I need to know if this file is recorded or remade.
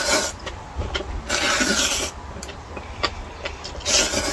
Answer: recorded